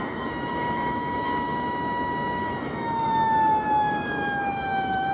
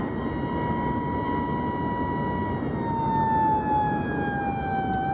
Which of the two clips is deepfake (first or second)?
first